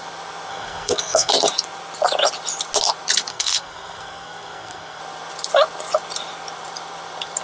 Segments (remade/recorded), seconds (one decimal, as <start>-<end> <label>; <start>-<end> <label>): 0.0-0.5 recorded; 0.5-1.3 remade; 1.3-3.3 recorded; 3.3-5.0 remade; 5.0-7.4 recorded